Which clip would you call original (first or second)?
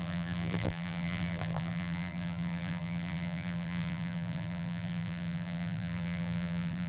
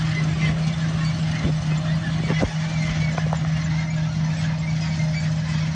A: second